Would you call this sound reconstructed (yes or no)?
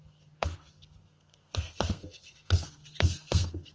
yes